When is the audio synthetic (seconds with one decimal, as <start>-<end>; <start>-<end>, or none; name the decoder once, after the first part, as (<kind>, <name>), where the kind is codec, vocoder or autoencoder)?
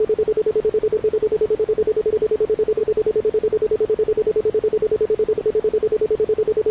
1.0-2.1 (codec, DAC)